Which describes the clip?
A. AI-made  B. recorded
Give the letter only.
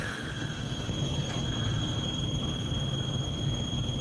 A